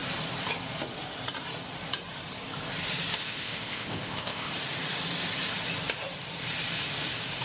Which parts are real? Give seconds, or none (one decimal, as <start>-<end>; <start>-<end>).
0.0-3.2; 4.5-7.4

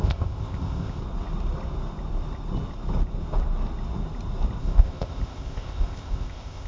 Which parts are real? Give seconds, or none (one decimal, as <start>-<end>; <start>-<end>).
1.0-4.6

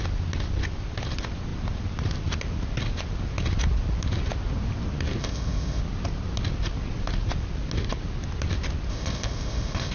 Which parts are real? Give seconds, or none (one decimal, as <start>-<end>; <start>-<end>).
0.0-5.2; 5.8-8.9

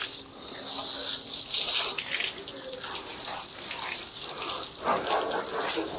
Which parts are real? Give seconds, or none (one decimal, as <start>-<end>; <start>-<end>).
0.0-6.0

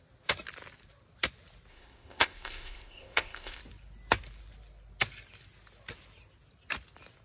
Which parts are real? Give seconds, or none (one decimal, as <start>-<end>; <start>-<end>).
0.0-1.7; 3.6-7.2